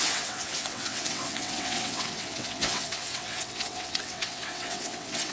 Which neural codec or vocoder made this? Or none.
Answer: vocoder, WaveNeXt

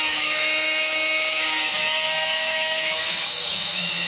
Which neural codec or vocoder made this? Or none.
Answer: autoencoder, DAC-VAE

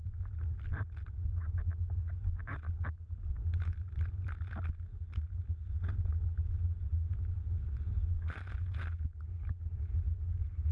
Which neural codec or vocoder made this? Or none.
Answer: none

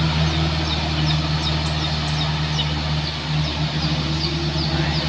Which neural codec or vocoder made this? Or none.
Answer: none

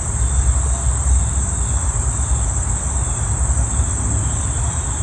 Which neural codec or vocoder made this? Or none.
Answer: none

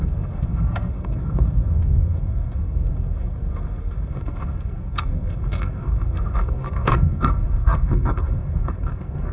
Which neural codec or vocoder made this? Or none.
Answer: codec, SNAC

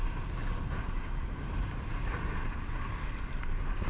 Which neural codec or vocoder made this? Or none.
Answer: none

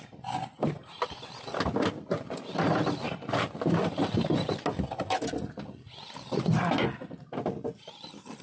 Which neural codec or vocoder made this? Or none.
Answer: none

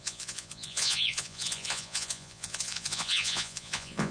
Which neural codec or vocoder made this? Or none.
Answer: vocoder, Vocos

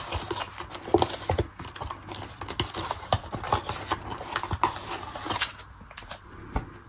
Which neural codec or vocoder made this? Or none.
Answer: none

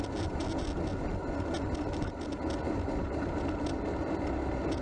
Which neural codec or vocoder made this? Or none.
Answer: none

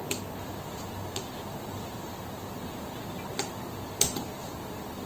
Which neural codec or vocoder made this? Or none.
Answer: none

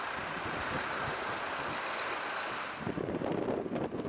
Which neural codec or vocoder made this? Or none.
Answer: none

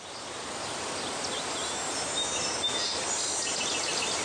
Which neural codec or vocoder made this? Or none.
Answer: none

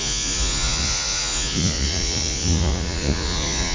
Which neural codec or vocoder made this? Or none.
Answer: vocoder, Vocos